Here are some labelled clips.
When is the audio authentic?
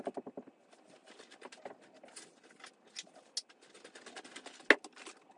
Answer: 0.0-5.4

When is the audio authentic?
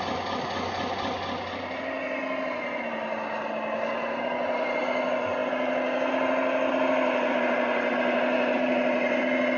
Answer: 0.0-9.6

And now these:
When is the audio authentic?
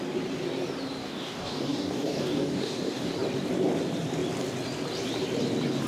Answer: 0.0-1.0; 3.1-5.9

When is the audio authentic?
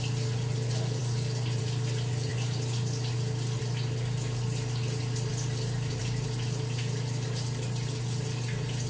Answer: 0.0-8.9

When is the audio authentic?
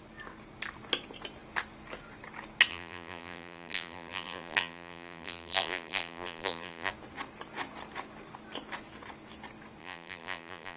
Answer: 0.0-2.7; 6.9-9.8